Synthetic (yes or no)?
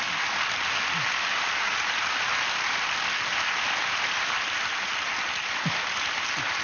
no